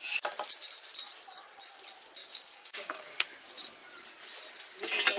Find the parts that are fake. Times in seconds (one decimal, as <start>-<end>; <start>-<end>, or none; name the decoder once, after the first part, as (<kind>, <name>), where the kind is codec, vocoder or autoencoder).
2.2-3.0 (codec, DAC)